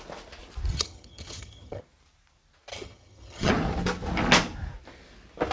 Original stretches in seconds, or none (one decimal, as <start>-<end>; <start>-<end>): 0.0-0.7; 1.8-2.7; 3.5-5.5